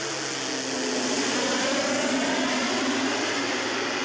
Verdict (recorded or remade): recorded